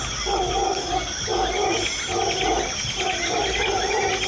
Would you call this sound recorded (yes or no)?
yes